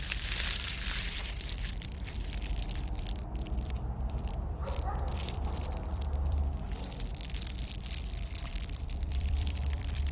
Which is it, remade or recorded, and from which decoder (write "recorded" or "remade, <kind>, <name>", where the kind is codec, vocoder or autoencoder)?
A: remade, vocoder, BigVGAN v2